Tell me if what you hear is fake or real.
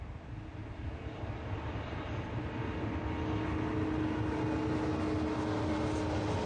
real